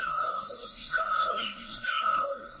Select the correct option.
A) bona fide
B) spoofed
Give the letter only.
B